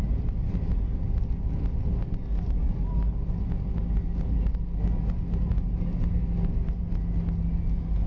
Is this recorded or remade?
recorded